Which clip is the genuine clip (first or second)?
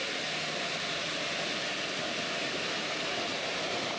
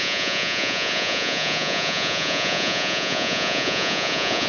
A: first